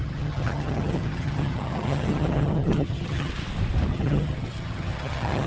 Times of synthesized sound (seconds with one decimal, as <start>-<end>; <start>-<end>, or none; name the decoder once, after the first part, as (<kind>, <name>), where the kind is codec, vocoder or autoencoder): 0.0-3.3 (vocoder, HiFi-GAN); 3.9-5.5